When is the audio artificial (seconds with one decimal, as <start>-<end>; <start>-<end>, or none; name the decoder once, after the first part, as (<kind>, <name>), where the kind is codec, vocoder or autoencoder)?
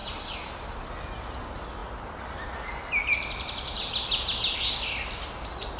0.0-0.5 (vocoder, BigVGAN v2)